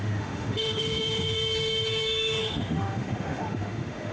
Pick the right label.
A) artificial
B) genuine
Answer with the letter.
A